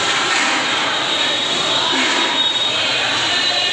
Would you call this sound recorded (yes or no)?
no